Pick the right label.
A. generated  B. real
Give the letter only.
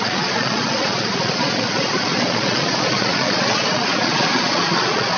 A